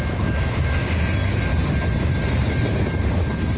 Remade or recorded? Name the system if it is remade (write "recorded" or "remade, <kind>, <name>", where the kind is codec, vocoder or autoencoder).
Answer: recorded